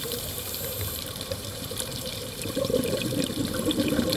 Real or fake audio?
fake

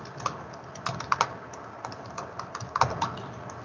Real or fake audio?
real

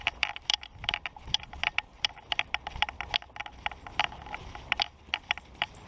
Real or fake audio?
fake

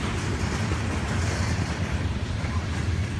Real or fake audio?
fake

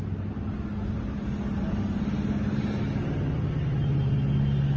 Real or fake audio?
real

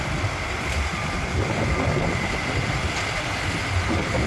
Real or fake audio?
fake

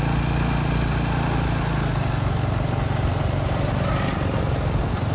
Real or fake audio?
real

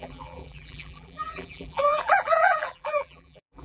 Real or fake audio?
fake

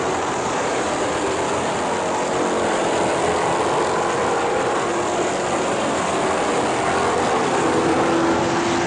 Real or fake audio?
real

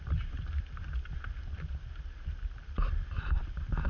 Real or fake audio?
fake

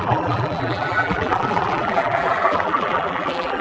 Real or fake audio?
fake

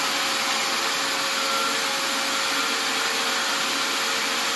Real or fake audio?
real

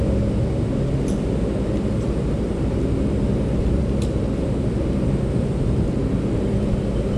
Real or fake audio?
real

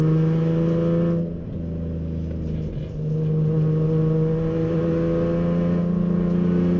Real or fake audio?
real